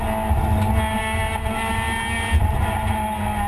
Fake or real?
real